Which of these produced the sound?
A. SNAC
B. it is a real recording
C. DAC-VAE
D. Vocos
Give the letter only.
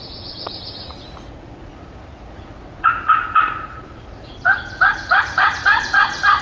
D